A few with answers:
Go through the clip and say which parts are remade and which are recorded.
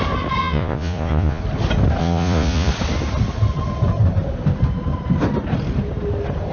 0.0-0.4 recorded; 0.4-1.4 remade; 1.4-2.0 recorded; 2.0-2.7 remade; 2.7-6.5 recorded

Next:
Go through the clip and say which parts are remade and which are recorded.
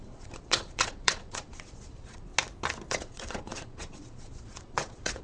0.0-2.3 remade; 2.3-2.9 recorded; 2.9-5.2 remade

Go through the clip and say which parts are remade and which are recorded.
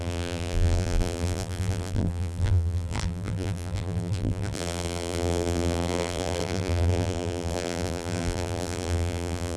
0.0-9.6 remade